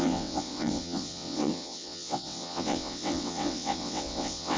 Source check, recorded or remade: remade